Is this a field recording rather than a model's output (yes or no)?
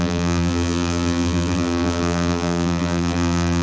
no